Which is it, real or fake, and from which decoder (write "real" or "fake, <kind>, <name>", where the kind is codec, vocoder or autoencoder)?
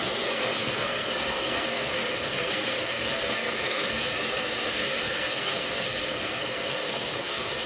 fake, codec, SNAC